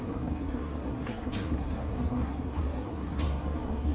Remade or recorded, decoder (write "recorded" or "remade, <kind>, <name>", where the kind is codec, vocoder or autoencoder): remade, codec, SNAC